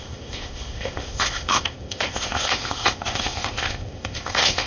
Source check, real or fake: fake